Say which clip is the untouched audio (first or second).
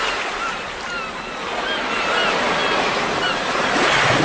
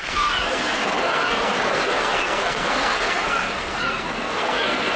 first